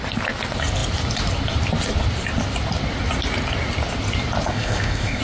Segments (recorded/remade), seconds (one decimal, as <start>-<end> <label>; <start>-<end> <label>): 0.0-4.5 recorded; 4.5-5.2 remade